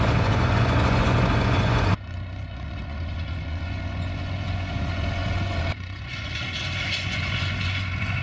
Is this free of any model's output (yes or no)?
no